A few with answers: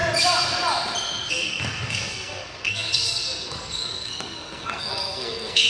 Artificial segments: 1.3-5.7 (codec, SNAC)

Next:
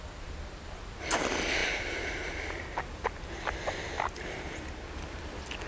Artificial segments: none

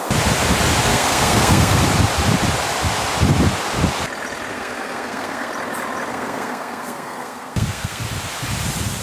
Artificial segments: 0.9-1.8 (codec, SNAC); 4.5-5.5; 6.1-8.0

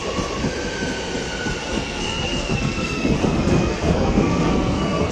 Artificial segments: 1.6-5.1 (codec, SNAC)

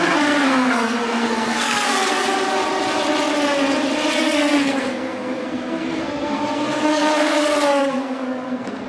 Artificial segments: 0.0-2.2 (codec, SNAC); 4.2-8.9

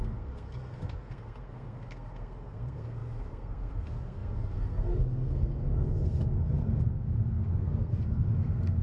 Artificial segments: 0.0-8.8 (codec, SNAC)

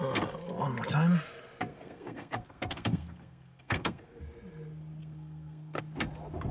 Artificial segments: 1.7-4.2 (codec, SNAC); 5.0-5.8